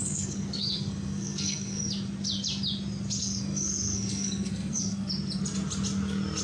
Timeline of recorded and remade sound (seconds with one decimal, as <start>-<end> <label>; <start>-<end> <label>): 0.0-1.8 remade; 1.8-3.2 recorded; 3.2-5.1 remade; 5.1-6.4 recorded